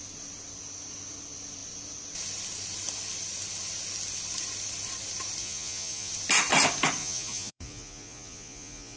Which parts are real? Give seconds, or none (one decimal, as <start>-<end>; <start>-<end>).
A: 0.0-5.4; 6.1-7.0